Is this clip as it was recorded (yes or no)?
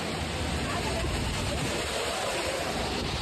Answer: yes